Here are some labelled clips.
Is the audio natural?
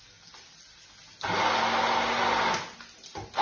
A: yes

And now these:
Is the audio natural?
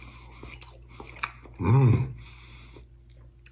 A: yes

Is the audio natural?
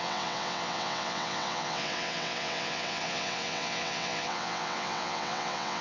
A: no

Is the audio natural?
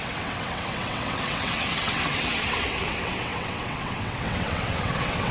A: no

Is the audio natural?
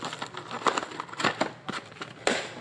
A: yes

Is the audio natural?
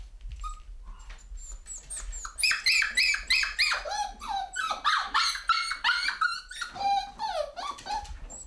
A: yes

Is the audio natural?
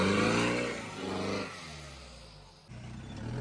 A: yes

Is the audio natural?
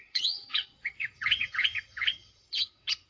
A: no